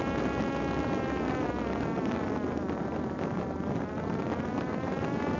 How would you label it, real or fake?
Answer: real